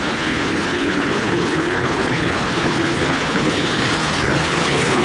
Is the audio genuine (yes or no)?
no